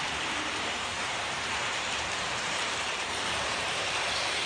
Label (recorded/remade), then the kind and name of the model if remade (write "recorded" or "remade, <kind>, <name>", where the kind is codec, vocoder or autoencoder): remade, vocoder, BigVGAN v2